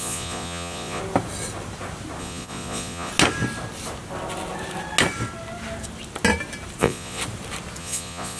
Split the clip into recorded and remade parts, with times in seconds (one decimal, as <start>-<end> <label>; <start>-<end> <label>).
0.0-1.0 remade; 1.0-2.2 recorded; 2.2-3.1 remade; 3.1-6.8 recorded; 6.8-7.2 remade; 7.2-7.8 recorded; 7.8-8.4 remade